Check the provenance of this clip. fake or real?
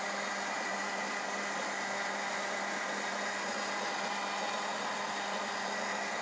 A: real